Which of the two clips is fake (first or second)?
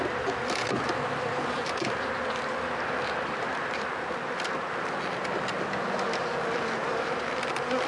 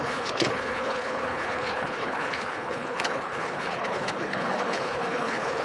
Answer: second